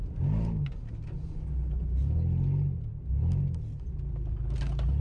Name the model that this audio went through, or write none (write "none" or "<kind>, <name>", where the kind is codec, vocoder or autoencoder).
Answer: none